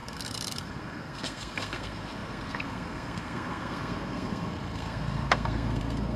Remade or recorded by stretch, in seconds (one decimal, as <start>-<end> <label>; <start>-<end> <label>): 0.0-6.2 remade